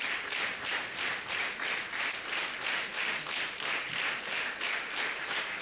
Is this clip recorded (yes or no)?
yes